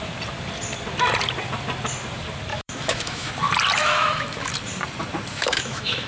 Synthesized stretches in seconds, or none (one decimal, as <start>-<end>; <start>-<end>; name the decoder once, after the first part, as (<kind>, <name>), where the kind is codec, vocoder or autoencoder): 2.5-3.3 (autoencoder, DAC-VAE); 3.8-4.5; 5.3-6.1